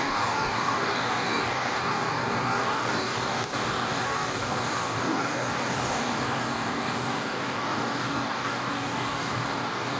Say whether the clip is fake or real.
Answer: fake